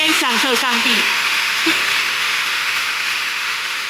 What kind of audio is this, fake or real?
fake